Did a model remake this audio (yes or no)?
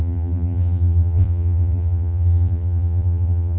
yes